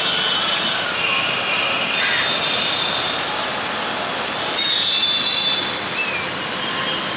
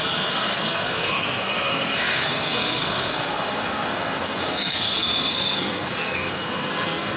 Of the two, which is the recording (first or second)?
first